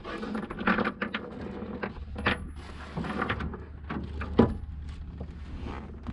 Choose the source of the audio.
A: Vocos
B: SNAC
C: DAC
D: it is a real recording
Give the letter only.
D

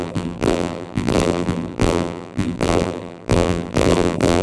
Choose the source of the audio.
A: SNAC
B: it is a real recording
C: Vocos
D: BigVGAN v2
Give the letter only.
D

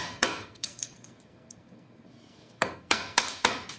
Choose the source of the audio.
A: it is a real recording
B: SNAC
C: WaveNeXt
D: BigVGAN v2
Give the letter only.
B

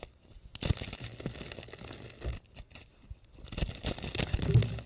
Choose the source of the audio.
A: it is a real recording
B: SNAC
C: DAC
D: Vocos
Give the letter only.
A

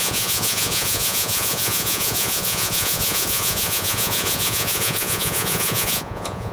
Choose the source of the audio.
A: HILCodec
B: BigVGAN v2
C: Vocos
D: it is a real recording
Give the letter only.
C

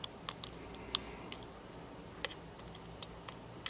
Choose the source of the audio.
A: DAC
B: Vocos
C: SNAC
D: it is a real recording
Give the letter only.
D